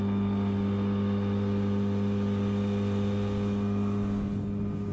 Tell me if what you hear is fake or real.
real